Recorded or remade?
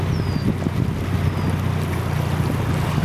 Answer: recorded